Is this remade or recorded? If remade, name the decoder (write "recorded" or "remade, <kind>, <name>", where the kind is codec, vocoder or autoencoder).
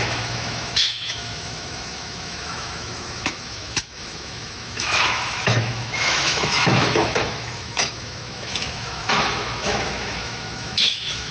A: remade, autoencoder, DAC-VAE